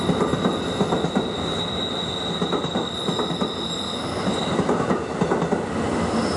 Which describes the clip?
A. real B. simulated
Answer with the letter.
A